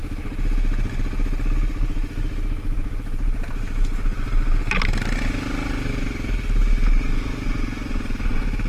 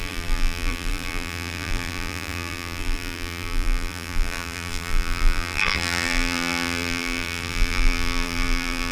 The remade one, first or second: second